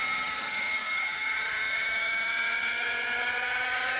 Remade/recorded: remade